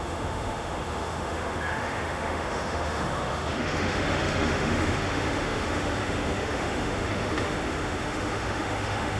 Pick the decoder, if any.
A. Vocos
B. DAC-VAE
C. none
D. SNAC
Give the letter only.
B